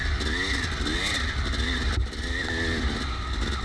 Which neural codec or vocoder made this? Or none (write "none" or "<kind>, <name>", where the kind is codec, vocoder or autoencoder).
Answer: none